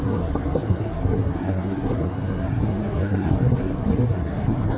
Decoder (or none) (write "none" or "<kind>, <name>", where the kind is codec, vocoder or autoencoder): codec, SNAC